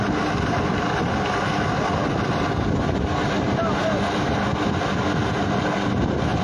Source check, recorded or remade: recorded